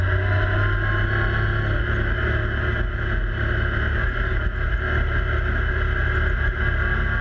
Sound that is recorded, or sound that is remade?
recorded